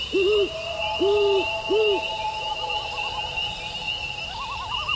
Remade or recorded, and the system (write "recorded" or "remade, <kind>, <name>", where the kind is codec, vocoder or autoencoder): recorded